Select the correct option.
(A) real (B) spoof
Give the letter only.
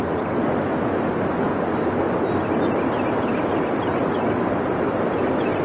A